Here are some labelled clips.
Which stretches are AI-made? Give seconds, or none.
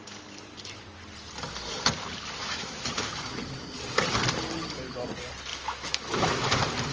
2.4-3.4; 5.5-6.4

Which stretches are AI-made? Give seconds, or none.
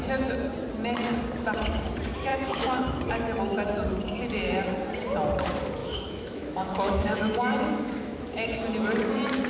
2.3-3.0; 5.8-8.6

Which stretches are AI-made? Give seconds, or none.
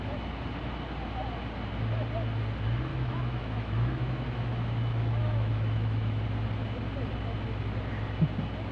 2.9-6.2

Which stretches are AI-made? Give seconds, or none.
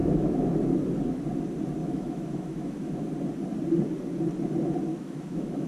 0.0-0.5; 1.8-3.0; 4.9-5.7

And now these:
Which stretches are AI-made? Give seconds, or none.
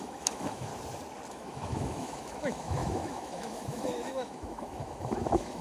0.0-0.7; 1.3-5.6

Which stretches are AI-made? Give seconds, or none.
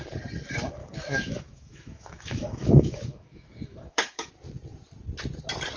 0.8-4.3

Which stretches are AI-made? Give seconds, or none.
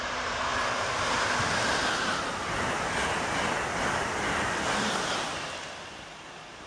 none